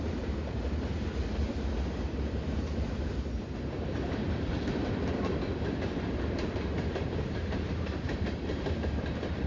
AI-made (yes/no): yes